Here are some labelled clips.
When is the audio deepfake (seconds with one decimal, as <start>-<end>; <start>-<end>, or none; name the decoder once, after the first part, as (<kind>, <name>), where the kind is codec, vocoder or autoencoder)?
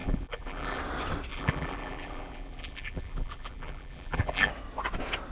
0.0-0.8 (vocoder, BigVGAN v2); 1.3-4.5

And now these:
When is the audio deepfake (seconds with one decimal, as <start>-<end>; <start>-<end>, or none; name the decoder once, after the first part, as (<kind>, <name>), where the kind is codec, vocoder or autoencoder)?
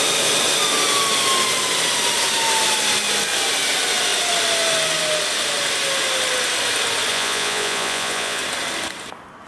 7.1-8.4 (vocoder, Vocos)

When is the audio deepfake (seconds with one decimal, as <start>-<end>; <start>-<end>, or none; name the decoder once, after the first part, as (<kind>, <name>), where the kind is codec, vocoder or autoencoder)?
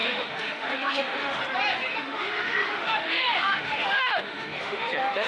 0.0-1.4 (autoencoder, DAC-VAE); 1.9-5.3